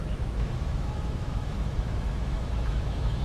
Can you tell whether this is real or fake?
fake